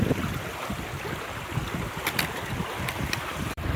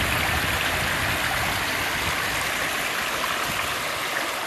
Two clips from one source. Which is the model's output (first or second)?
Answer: first